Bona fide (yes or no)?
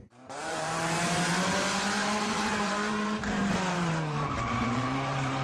no